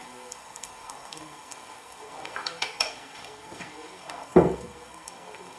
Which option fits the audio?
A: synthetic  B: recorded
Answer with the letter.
A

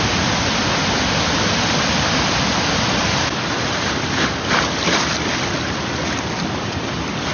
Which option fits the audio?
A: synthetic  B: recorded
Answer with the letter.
B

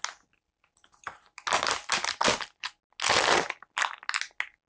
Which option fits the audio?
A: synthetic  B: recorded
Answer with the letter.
B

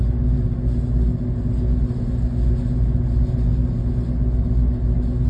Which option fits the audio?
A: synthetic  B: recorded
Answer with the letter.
B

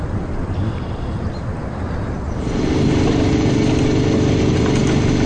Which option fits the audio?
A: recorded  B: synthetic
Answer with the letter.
A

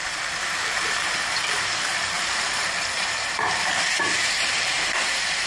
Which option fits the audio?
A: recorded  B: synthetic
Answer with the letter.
B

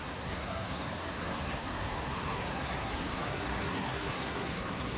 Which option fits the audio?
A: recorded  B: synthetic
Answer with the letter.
B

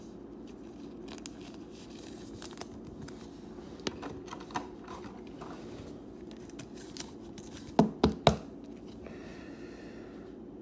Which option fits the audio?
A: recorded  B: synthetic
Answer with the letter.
A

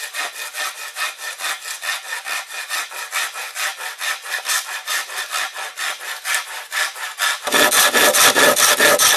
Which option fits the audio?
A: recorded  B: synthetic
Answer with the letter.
A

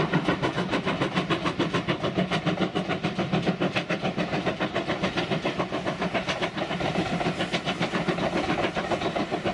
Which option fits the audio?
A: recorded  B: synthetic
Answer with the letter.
A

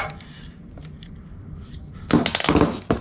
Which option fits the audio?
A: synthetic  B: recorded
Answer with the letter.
B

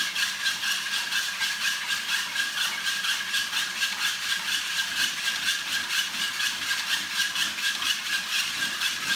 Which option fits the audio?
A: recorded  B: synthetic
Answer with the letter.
B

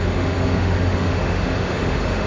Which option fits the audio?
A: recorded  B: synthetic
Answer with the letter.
B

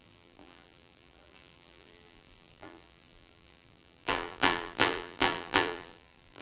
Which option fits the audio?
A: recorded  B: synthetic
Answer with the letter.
B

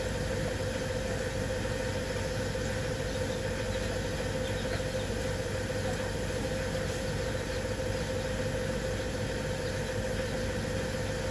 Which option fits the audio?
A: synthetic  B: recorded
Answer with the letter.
B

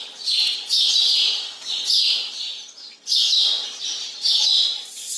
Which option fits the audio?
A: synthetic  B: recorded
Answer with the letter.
B